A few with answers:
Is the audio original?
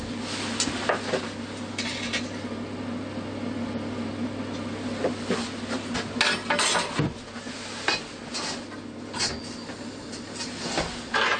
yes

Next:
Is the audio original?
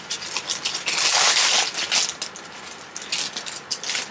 yes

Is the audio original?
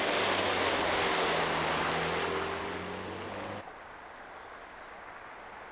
yes